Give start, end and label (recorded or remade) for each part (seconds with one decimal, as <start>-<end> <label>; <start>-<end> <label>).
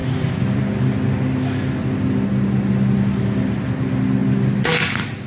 0.0-5.3 recorded